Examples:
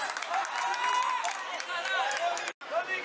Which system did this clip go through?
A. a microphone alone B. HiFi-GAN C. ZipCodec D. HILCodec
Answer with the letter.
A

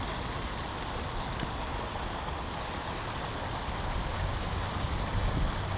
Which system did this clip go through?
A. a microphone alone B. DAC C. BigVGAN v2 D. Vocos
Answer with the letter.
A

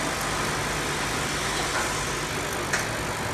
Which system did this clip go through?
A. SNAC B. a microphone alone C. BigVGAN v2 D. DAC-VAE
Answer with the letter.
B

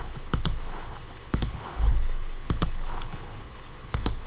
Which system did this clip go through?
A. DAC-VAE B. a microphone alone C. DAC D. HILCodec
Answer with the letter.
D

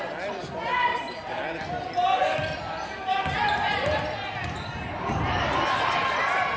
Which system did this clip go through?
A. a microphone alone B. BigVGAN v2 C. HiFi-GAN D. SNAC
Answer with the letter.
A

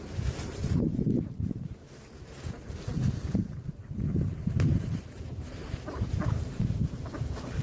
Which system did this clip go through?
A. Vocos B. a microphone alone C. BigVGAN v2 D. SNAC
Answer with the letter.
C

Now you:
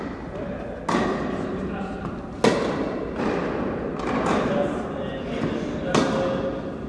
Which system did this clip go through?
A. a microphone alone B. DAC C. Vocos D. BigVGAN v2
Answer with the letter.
A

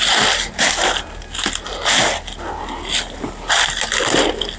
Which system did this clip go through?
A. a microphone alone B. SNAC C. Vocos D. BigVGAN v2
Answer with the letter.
A